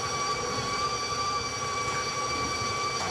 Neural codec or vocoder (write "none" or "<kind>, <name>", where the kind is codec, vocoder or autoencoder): vocoder, BigVGAN v2